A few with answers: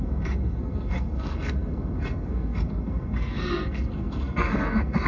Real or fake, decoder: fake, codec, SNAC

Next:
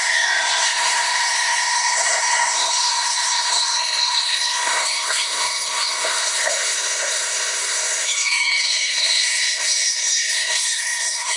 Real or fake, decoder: fake, codec, SNAC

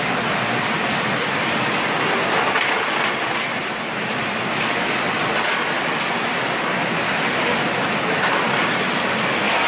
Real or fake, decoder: real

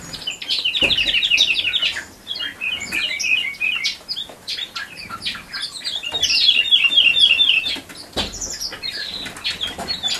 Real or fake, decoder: real